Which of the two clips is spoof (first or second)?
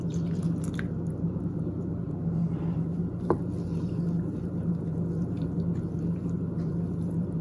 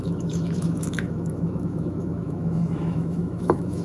second